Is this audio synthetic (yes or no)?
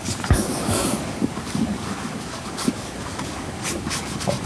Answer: yes